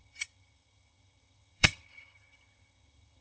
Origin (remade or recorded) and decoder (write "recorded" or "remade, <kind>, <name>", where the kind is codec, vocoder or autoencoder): remade, vocoder, HiFi-GAN